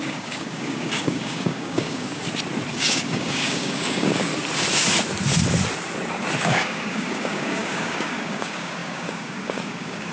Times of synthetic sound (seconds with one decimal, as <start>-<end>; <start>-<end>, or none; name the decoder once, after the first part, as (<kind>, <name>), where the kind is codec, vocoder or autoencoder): 0.0-2.2 (codec, DAC); 2.7-4.3; 6.4-10.1